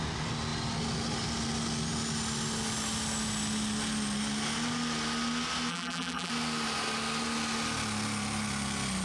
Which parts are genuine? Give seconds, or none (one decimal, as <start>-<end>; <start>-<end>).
0.0-5.7; 6.3-9.0